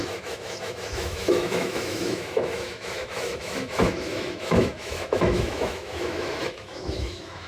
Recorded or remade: remade